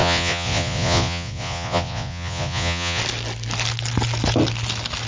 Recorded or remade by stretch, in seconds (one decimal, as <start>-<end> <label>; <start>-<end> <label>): 0.0-3.0 remade; 3.0-5.1 recorded